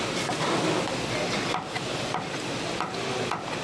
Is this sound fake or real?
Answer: real